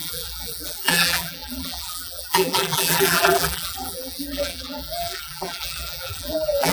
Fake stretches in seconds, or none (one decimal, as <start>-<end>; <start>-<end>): 0.0-6.7